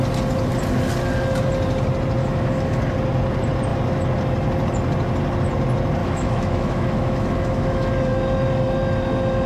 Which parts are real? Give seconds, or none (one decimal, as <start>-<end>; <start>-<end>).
0.0-2.2; 2.8-6.0; 7.9-9.5